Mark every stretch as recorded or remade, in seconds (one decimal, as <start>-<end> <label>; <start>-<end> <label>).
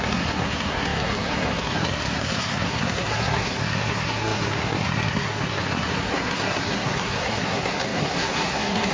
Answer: 0.0-8.9 remade